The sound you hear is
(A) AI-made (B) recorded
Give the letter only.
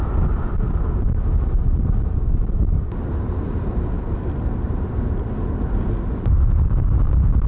B